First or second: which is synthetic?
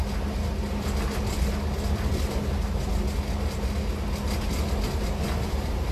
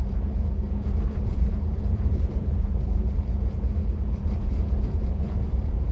second